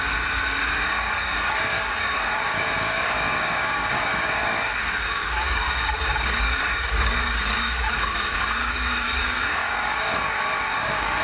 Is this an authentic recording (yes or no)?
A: no